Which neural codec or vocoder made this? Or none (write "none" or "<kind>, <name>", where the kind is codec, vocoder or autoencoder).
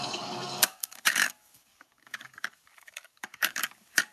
codec, DAC